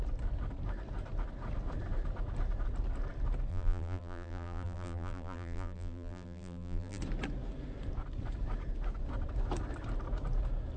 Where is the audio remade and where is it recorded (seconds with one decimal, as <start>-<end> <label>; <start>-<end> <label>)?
0.0-3.5 recorded; 3.5-7.0 remade; 7.0-10.8 recorded